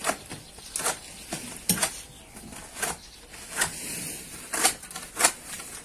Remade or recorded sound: recorded